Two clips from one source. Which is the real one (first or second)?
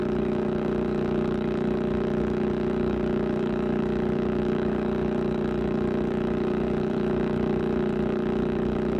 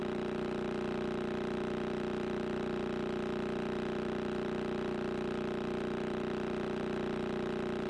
second